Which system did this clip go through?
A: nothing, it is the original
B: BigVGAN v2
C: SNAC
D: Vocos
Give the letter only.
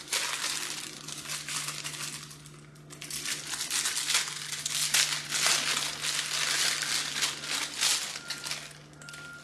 A